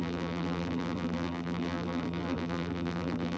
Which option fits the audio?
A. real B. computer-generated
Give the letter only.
B